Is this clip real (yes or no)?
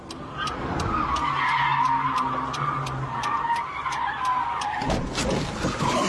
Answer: yes